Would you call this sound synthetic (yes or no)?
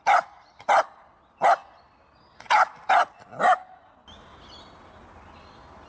no